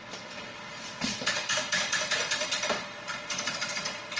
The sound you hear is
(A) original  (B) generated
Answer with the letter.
B